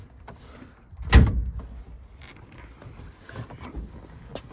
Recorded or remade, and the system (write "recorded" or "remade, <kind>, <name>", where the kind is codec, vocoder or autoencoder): recorded